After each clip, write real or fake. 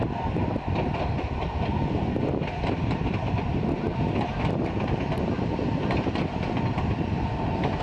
real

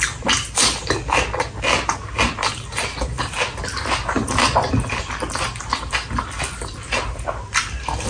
real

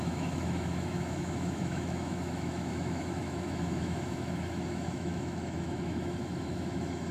fake